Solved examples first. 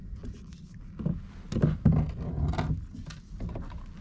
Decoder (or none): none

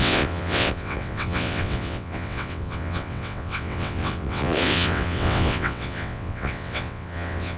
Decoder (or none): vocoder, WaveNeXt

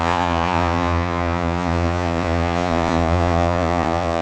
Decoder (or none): vocoder, Vocos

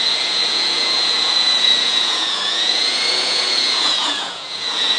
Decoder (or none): vocoder, Vocos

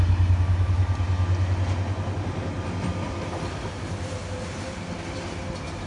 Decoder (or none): none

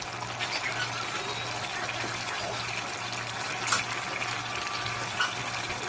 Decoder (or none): none